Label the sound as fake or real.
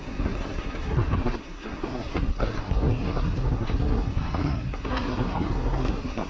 fake